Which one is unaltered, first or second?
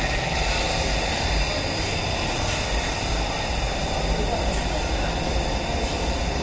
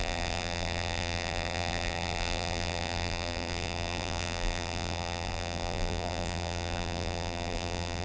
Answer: first